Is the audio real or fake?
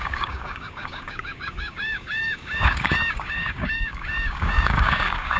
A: fake